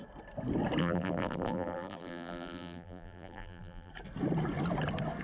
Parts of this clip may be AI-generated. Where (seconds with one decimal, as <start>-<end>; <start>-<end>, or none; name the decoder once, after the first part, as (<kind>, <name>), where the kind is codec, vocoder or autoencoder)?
0.8-3.9 (vocoder, BigVGAN v2)